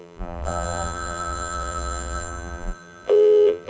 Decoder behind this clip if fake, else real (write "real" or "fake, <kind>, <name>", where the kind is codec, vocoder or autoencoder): fake, vocoder, BigVGAN v2